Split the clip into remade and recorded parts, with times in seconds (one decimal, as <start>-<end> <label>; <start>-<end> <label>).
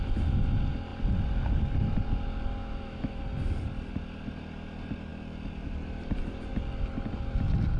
0.0-2.6 recorded; 2.6-3.2 remade; 3.2-7.8 recorded